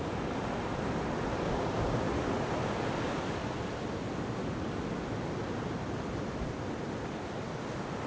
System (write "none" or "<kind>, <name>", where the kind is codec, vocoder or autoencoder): none